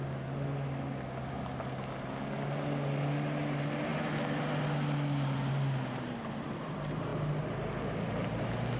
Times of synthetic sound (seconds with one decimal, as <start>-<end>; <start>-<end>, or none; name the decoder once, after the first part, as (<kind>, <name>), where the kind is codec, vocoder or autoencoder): none